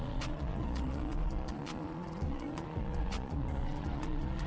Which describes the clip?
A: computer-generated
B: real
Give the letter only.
A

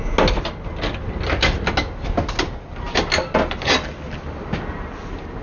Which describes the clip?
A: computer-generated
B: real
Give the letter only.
B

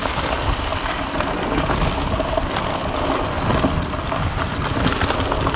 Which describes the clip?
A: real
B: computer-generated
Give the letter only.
A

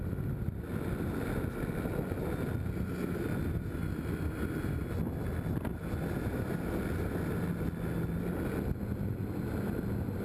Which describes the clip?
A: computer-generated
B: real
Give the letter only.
B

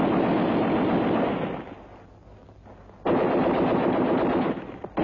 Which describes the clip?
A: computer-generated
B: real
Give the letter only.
B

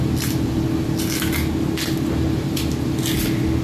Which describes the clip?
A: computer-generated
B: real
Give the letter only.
B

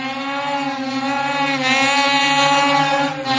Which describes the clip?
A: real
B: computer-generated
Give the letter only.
A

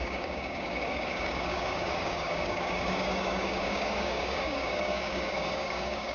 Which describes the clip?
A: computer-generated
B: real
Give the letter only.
A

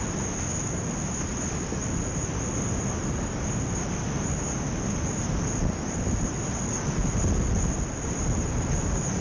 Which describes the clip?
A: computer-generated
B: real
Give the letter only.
B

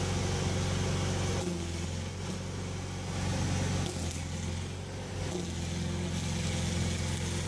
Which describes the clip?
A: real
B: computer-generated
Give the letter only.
A